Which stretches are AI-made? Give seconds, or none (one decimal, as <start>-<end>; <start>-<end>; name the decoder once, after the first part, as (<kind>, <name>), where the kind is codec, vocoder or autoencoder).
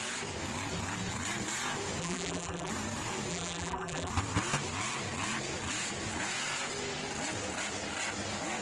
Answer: 2.0-2.7 (vocoder, BigVGAN v2); 3.3-4.1